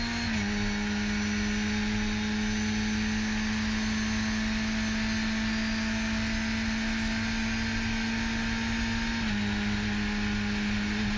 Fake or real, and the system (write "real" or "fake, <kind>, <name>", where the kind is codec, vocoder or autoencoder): real